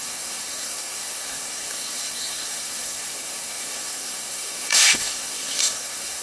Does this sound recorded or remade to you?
remade